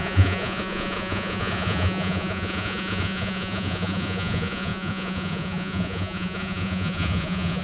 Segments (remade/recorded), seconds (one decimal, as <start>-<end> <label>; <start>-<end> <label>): 0.0-7.6 remade